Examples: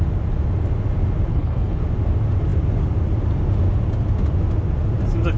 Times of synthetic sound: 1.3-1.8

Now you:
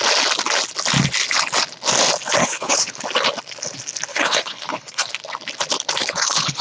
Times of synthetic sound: 2.4-3.0; 4.1-5.1; 6.0-6.6

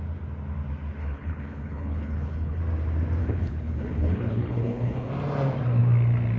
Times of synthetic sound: 1.0-2.6; 3.2-5.1

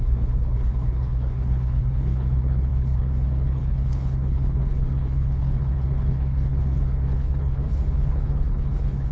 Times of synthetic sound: 0.0-9.1